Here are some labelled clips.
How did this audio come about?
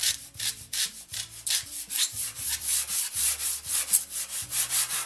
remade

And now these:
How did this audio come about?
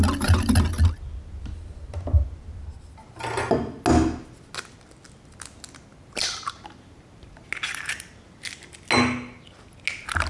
recorded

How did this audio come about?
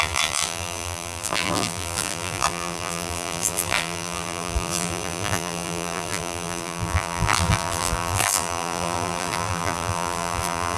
remade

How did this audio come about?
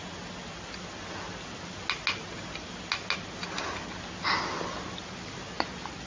recorded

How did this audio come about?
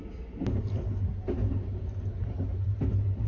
recorded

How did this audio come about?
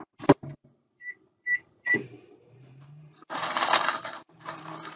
remade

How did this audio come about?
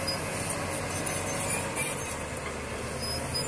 recorded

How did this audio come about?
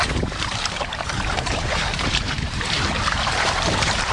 remade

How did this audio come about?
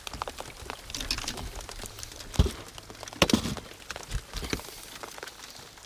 recorded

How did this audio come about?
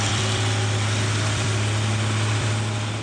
remade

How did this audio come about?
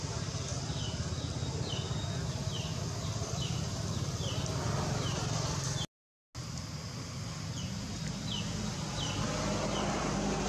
recorded